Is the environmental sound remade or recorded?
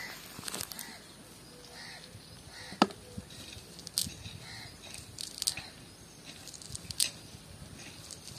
recorded